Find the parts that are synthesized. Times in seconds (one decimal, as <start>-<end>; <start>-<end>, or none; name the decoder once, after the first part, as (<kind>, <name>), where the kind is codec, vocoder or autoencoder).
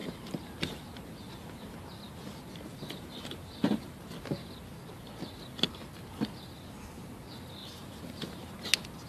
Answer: 0.0-1.6 (vocoder, BigVGAN v2); 2.7-4.0; 7.6-8.6